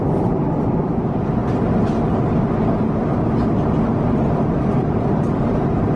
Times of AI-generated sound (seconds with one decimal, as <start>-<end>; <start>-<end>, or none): none